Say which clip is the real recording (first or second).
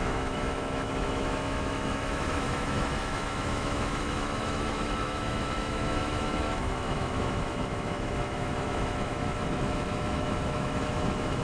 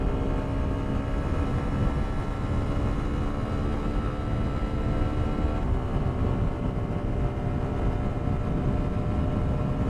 second